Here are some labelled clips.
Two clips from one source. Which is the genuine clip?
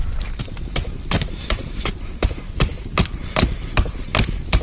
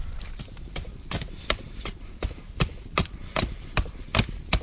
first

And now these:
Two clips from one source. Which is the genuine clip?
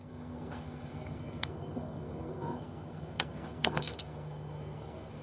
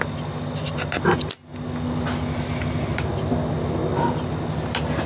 second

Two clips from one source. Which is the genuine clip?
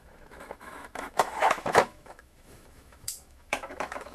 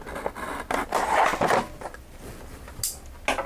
second